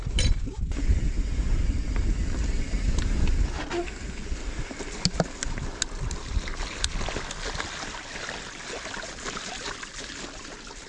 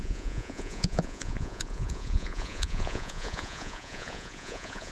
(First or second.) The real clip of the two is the first